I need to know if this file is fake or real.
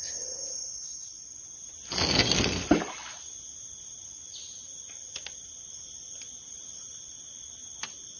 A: real